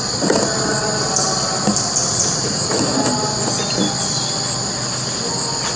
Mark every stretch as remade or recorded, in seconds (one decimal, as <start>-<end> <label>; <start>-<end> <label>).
0.0-2.0 recorded; 2.0-2.7 remade; 2.7-5.8 recorded